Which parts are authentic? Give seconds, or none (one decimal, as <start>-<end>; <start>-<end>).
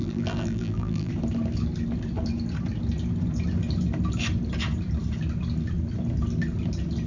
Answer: 1.1-7.1